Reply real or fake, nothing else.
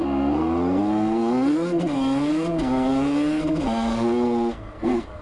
fake